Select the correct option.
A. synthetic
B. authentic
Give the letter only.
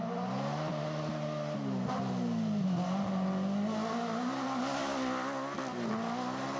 B